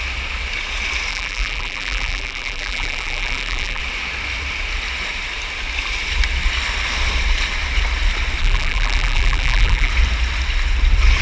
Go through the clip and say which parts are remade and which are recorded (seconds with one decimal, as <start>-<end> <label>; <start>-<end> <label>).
0.0-1.1 recorded; 1.1-3.8 remade; 3.8-8.4 recorded; 8.4-9.9 remade; 9.9-11.2 recorded